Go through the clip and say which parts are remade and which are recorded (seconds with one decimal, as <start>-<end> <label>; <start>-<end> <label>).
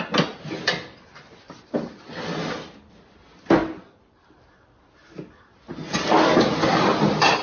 0.0-7.4 recorded